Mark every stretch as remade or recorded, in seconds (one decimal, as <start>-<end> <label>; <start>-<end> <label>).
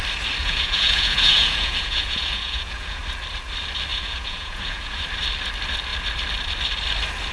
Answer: 0.0-0.4 recorded; 0.4-3.0 remade; 3.0-3.9 recorded; 3.9-5.0 remade; 5.0-7.3 recorded